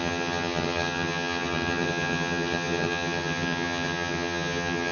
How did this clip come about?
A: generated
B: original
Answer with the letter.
A